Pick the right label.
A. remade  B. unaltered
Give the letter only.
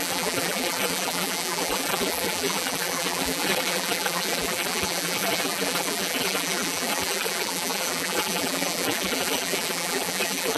A